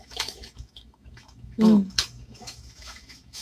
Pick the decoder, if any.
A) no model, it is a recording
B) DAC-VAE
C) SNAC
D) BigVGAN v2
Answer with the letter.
B